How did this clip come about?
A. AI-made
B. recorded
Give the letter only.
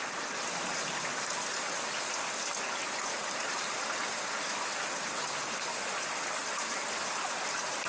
B